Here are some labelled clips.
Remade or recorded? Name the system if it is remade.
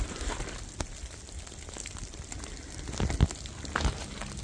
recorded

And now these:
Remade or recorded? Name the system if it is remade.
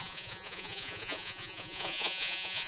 remade, vocoder, Vocos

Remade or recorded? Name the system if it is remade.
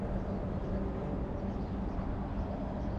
recorded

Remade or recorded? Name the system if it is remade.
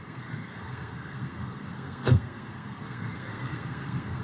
remade, codec, SNAC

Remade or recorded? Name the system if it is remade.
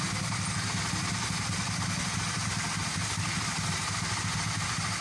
recorded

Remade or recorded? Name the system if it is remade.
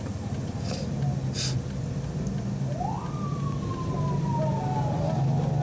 recorded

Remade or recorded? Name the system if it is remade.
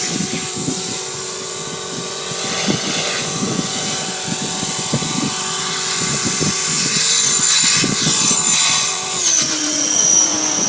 remade, vocoder, Vocos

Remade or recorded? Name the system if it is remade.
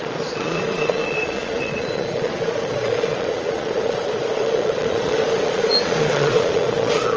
remade, vocoder, Vocos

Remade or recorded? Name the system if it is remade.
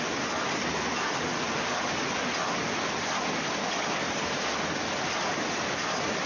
recorded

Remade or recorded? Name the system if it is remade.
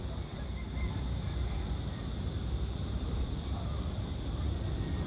recorded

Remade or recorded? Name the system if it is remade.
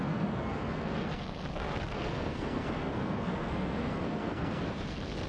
remade, codec, SNAC